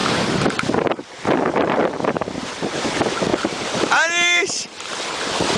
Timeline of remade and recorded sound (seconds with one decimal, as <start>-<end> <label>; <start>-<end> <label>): 0.0-2.9 remade; 2.9-3.3 recorded; 3.3-4.9 remade; 4.9-5.6 recorded